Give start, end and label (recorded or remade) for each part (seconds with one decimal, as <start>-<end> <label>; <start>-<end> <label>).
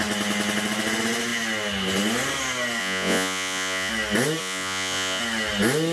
0.0-2.8 recorded; 2.8-3.9 remade; 3.9-4.4 recorded; 4.4-5.2 remade; 5.2-5.9 recorded